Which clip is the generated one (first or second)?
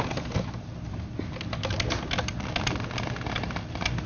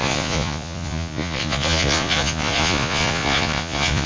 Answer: second